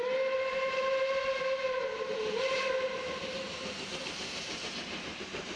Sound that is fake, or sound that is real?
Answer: fake